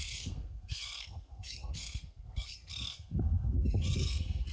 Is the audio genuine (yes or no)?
no